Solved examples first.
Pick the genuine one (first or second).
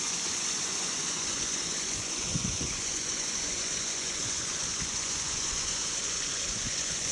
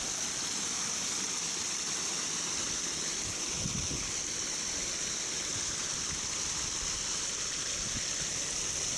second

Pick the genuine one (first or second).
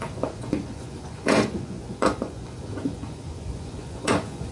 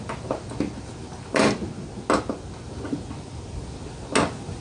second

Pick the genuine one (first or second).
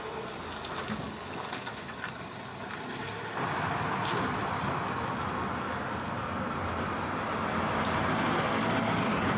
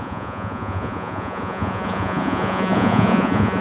first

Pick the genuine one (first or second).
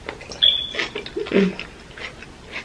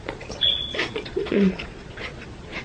first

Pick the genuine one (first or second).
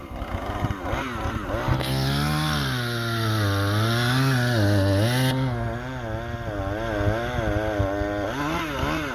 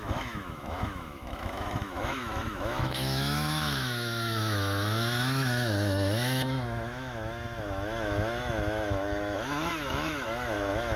first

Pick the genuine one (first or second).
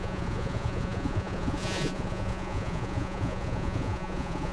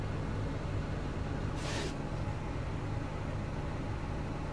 second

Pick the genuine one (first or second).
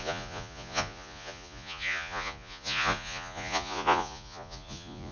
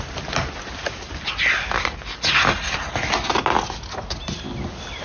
second